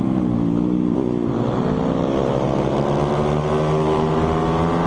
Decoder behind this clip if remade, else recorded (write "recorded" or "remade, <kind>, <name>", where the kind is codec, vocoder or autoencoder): recorded